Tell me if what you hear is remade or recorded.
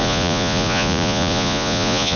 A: remade